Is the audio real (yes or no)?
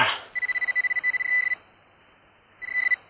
yes